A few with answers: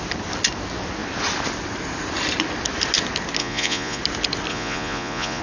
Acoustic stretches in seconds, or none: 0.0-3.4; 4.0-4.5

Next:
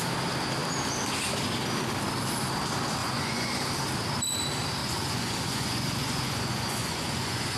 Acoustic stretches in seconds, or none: 0.0-3.0; 3.5-4.8

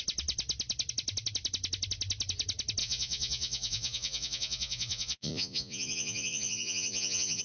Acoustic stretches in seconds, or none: 0.0-2.8

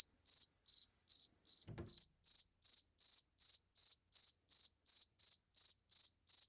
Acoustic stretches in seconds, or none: 0.0-3.1; 5.2-6.5

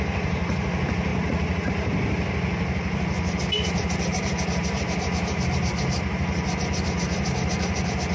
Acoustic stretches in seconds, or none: 0.0-1.1; 1.7-8.1

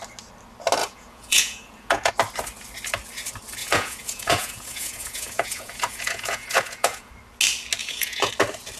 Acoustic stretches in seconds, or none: 0.0-0.8; 2.1-3.6; 7.1-7.8; 8.3-8.8

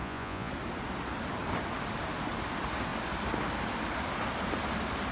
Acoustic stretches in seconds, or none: 0.5-5.1

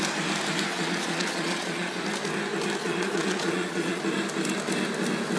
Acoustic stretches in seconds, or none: 0.0-0.7; 2.0-2.8; 4.0-5.4